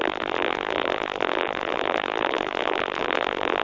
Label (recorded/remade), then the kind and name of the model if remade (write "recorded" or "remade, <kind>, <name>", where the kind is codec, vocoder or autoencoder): remade, vocoder, BigVGAN v2